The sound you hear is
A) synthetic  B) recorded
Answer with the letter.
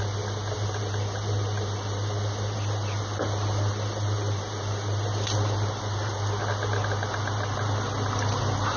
B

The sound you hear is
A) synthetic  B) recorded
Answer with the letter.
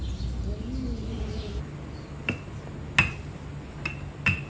B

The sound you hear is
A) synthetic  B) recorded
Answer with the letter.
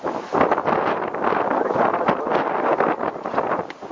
B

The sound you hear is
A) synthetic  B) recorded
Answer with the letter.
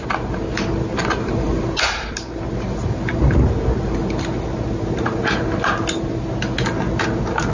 B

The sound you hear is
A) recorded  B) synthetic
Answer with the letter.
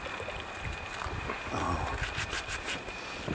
A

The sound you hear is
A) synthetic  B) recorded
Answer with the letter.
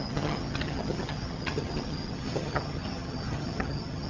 A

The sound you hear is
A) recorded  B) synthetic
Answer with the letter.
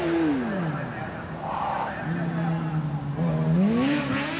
A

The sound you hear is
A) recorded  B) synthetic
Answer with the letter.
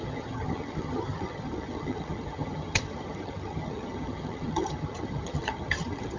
B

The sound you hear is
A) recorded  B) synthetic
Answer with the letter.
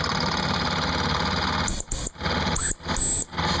A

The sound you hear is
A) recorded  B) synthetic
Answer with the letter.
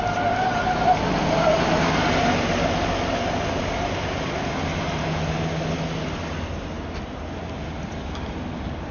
A